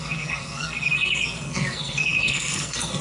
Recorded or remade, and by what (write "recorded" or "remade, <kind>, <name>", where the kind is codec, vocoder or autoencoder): remade, codec, SNAC